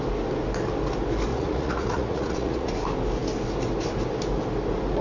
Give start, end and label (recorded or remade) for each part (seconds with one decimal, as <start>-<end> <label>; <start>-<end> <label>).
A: 0.0-1.3 recorded; 1.3-2.7 remade; 2.7-5.0 recorded